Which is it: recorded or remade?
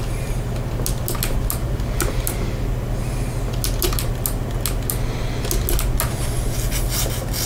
recorded